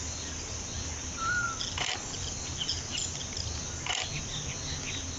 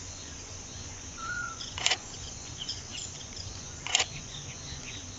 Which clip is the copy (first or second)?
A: second